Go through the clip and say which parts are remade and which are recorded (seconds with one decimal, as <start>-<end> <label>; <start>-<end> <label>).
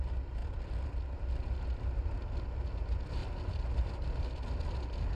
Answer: 0.0-5.2 recorded